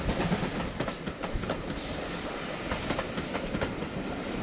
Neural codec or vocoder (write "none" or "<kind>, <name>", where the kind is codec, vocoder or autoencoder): none